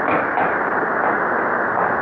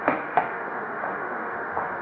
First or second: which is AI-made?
second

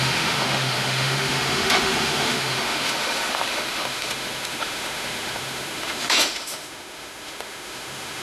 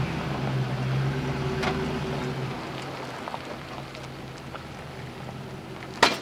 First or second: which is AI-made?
first